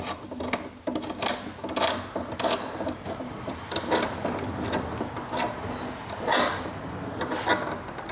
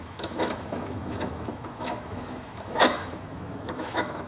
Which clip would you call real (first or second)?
first